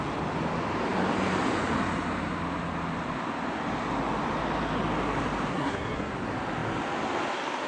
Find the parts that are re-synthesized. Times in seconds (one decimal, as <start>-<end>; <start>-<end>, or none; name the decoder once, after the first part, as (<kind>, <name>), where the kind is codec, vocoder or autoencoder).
5.5-6.1 (codec, SNAC)